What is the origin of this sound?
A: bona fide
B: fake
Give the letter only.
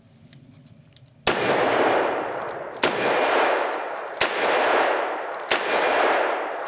A